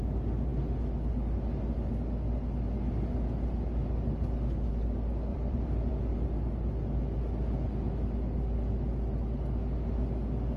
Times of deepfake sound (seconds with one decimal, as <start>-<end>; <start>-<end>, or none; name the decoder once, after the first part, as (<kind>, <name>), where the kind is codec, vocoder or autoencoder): 5.3-5.9 (vocoder, BigVGAN v2)